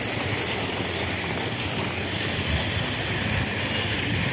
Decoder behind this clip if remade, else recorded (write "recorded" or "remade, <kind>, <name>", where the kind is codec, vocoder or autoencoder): recorded